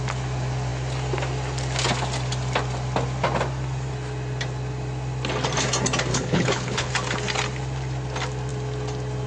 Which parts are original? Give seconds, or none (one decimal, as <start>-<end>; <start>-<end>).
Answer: 0.0-6.1; 6.9-9.3